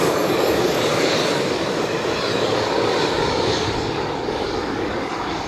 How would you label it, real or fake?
fake